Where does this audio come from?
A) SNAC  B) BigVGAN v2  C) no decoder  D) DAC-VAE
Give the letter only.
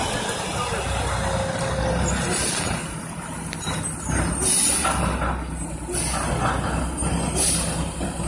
C